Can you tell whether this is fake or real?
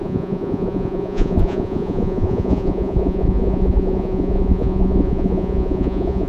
fake